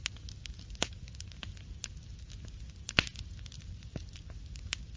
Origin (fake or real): real